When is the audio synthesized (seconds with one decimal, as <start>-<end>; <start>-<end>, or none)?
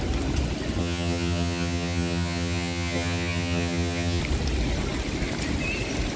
0.8-4.2